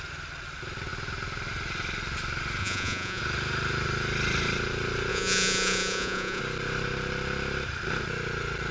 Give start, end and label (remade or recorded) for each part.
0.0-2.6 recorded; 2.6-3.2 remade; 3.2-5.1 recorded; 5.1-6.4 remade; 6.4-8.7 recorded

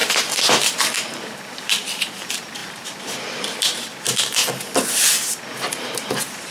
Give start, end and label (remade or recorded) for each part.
0.0-4.4 remade; 4.4-5.6 recorded; 5.6-6.5 remade

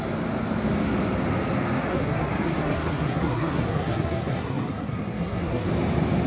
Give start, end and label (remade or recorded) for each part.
0.0-1.9 recorded; 1.9-5.7 remade; 5.7-6.3 recorded

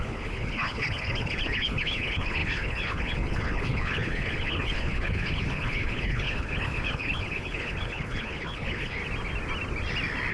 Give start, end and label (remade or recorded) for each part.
0.0-9.0 remade; 9.0-10.3 recorded